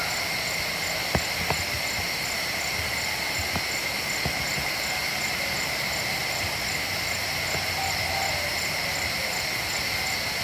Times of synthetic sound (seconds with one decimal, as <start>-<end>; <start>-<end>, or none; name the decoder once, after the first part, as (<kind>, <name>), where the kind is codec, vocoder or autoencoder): 6.2-9.8 (vocoder, BigVGAN v2)